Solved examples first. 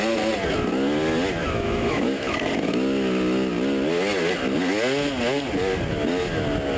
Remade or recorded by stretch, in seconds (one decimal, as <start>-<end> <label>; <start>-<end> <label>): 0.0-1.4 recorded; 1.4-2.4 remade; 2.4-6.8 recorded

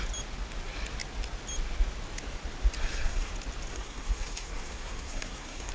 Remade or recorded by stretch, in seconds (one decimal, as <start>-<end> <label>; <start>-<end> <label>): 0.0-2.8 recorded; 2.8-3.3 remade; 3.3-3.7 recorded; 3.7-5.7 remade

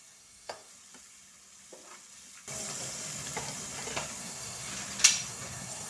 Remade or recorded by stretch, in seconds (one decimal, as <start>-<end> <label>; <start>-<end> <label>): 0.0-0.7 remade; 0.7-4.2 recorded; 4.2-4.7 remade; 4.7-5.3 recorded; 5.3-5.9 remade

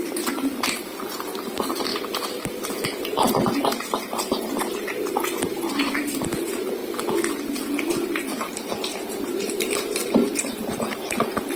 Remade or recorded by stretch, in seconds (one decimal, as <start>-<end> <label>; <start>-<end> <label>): 0.0-6.8 remade; 6.8-7.9 recorded; 7.9-11.6 remade

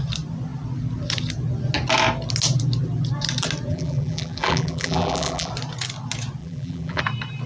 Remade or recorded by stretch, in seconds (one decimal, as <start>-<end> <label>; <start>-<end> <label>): 0.0-3.7 recorded; 3.7-5.5 remade; 5.5-6.4 recorded; 6.4-7.0 remade; 7.0-7.5 recorded

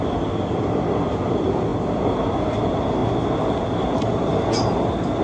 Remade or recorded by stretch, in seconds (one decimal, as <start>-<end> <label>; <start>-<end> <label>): 0.0-5.2 recorded